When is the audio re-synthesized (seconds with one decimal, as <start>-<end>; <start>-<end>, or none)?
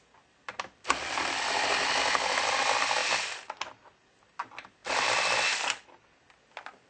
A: none